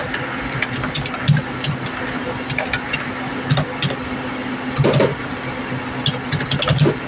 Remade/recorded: recorded